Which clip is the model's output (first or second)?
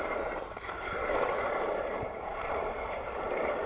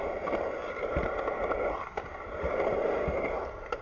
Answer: first